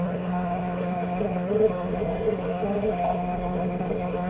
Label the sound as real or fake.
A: fake